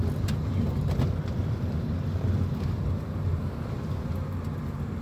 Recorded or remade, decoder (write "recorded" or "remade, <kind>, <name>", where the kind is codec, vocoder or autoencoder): recorded